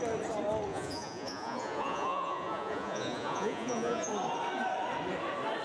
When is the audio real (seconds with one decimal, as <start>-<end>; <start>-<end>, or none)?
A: 0.0-0.7; 4.1-5.6